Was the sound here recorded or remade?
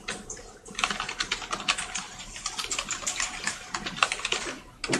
recorded